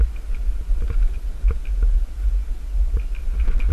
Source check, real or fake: real